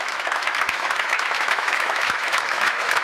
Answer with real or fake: fake